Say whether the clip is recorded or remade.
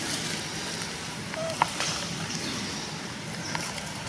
recorded